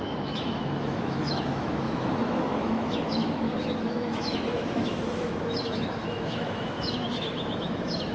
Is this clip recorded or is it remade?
remade